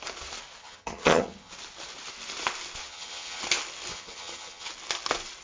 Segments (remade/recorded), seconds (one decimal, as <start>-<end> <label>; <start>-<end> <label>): 0.0-0.6 recorded; 0.6-1.5 remade; 1.5-2.8 recorded; 2.8-3.4 remade; 3.4-3.9 recorded; 3.9-4.7 remade; 4.7-5.4 recorded

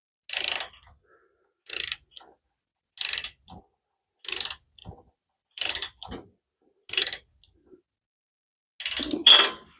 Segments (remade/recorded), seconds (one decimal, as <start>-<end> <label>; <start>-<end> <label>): 0.0-4.8 recorded; 4.8-5.7 remade; 5.7-9.8 recorded

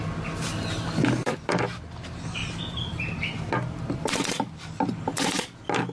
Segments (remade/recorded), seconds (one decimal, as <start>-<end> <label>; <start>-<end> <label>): 0.0-5.9 recorded

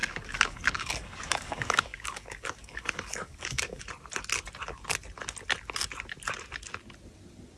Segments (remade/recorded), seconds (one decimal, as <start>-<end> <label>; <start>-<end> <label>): 0.0-3.8 remade; 3.8-7.6 recorded

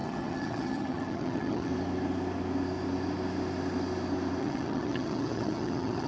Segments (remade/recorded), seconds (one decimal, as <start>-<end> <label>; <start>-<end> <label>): 0.0-1.7 remade; 1.7-4.4 recorded; 4.4-6.1 remade